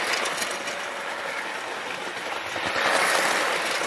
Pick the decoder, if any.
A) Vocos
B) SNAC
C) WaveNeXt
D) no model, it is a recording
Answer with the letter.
D